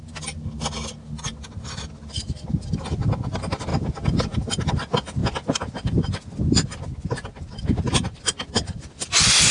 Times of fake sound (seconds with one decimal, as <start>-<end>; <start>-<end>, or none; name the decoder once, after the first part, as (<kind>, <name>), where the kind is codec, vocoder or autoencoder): none